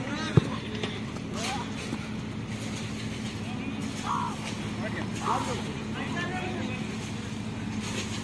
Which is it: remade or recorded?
recorded